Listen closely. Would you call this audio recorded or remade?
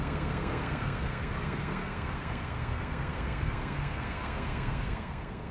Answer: remade